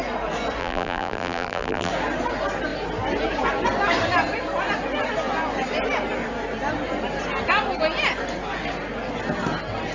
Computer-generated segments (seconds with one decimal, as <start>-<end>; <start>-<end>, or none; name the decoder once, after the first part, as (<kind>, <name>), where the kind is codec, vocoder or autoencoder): 0.6-1.9 (vocoder, BigVGAN v2)